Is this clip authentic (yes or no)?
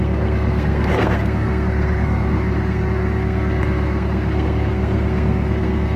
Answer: no